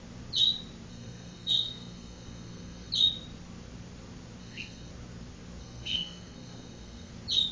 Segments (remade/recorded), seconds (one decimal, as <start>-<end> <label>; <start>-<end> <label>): 0.0-0.9 recorded; 0.9-2.9 remade; 2.9-4.4 recorded; 4.4-4.9 remade; 4.9-5.6 recorded; 5.6-7.1 remade; 7.1-7.5 recorded